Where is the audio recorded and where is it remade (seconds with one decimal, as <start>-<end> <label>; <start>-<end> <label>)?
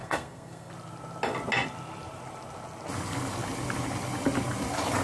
0.0-0.7 remade; 0.7-5.0 recorded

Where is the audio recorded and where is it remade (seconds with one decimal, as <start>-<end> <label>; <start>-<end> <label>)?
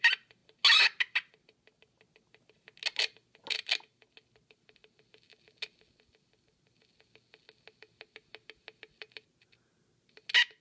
0.0-10.6 recorded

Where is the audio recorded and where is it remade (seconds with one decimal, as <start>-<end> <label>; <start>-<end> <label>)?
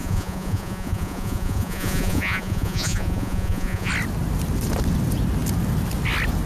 0.0-3.9 remade; 3.9-6.5 recorded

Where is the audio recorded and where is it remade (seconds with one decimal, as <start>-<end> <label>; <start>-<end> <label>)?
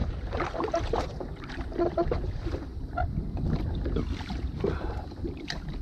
0.0-1.9 remade; 1.9-5.8 recorded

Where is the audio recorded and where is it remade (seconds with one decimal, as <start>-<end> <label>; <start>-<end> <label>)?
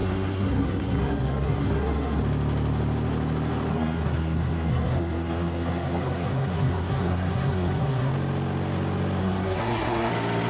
0.0-2.2 remade; 2.2-3.7 recorded; 3.7-8.1 remade; 8.1-9.2 recorded; 9.2-10.1 remade; 10.1-10.5 recorded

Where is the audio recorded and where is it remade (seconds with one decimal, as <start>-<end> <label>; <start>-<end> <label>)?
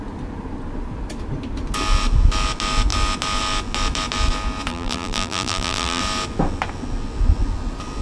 0.0-4.7 recorded; 4.7-6.0 remade; 6.0-8.0 recorded